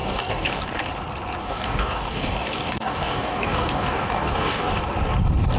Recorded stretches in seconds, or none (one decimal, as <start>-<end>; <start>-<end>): 0.6-1.4; 4.8-5.6